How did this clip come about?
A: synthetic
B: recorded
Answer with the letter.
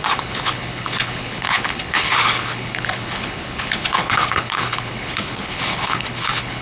A